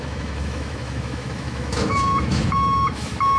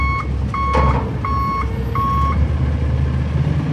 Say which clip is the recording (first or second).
second